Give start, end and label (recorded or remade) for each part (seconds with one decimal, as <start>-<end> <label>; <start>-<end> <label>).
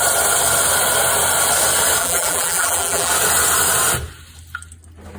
0.0-2.0 recorded; 2.0-3.1 remade; 3.1-5.2 recorded